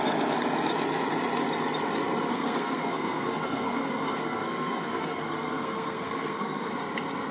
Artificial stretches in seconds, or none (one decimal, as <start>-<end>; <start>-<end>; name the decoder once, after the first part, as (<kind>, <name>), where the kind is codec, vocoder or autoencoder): 2.3-6.7 (codec, SNAC)